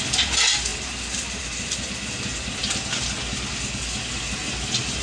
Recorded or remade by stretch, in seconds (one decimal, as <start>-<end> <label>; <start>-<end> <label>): 0.0-5.0 recorded